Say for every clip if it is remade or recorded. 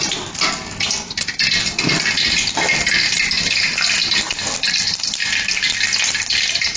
recorded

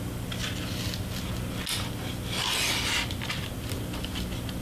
recorded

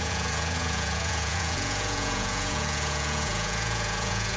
remade